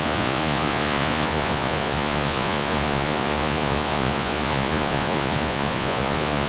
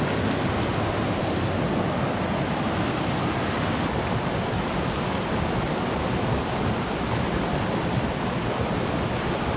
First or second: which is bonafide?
second